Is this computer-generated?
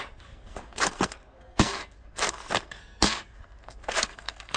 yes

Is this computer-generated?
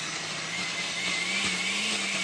no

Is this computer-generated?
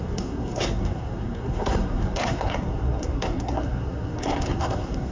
yes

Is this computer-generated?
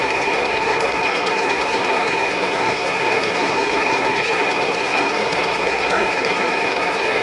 yes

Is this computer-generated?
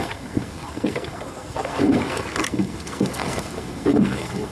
yes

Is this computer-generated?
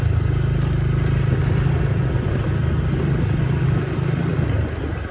no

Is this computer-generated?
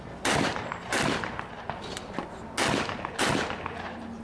no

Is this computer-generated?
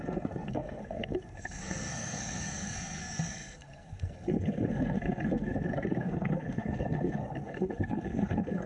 yes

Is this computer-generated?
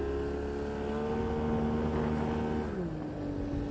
no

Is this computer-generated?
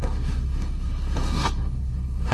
yes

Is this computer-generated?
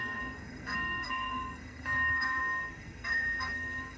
yes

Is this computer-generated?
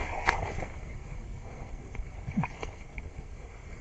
yes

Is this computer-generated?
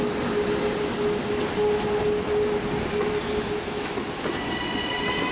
no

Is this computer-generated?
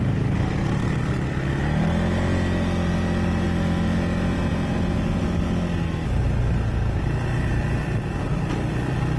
no